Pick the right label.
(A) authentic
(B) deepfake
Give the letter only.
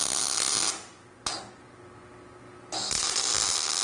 A